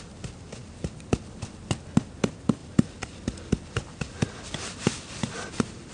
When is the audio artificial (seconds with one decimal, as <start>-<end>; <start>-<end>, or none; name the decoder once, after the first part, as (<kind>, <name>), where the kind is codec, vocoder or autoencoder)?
none